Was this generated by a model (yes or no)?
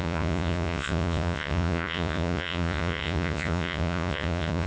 yes